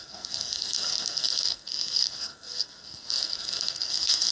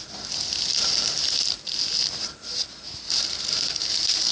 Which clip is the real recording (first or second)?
second